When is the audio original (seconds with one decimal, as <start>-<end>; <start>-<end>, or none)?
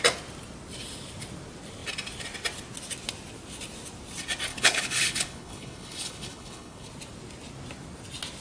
0.0-4.5; 6.9-8.4